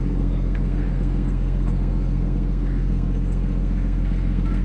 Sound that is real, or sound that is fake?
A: fake